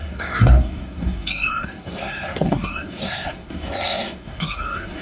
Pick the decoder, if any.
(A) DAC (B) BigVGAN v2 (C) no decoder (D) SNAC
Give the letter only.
D